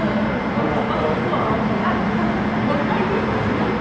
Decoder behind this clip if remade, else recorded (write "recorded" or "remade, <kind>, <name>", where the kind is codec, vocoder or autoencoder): recorded